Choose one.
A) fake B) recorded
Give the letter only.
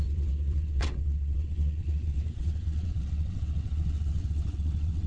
A